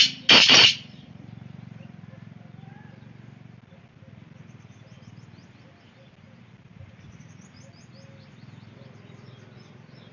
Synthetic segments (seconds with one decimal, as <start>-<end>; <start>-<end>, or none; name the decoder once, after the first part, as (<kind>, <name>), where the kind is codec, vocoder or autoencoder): 0.4-1.1 (vocoder, Vocos)